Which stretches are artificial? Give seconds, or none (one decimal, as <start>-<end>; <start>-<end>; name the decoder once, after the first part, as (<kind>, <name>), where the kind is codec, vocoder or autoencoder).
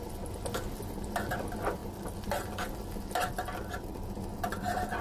none